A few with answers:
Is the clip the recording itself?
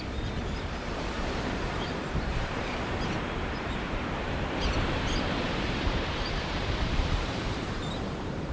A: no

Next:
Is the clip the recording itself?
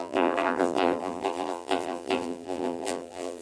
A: no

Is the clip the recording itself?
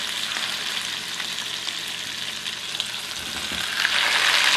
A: yes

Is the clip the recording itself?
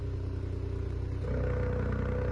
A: yes